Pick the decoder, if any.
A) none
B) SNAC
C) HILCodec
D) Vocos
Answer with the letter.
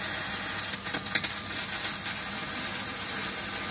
A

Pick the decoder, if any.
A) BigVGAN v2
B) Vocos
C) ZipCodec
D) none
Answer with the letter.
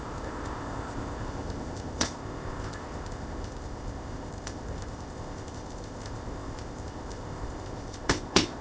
C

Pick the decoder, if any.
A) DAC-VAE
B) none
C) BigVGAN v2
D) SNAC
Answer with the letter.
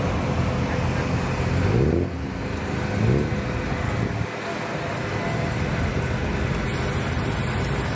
B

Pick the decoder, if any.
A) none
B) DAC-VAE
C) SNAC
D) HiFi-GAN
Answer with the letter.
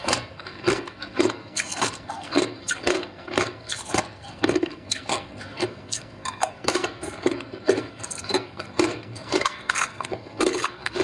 C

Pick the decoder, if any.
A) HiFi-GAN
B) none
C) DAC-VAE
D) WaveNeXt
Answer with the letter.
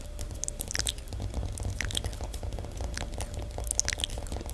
B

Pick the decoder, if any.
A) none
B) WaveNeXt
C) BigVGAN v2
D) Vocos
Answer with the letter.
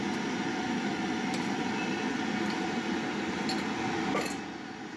A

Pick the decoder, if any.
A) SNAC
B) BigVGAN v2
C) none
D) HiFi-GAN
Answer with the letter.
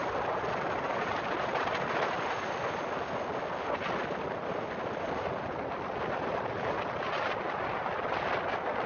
C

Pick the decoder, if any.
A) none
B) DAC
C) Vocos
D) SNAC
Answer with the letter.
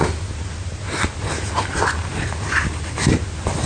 A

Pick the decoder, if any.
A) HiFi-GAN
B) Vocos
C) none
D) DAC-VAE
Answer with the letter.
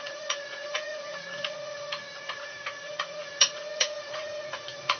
B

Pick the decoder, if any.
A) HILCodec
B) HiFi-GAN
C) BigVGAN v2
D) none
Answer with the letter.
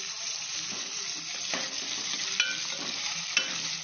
D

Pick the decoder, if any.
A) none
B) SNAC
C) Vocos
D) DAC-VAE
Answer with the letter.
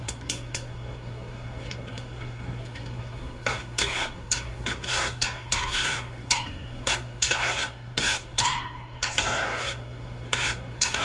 B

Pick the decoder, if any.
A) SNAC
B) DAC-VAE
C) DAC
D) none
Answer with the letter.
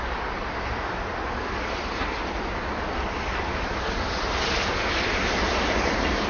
D